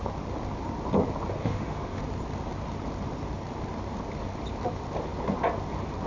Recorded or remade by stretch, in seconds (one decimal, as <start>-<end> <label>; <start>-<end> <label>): 0.0-1.4 recorded; 1.4-2.0 remade; 2.0-6.1 recorded